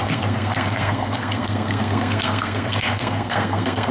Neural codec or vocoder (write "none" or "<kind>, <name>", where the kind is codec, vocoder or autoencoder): codec, SNAC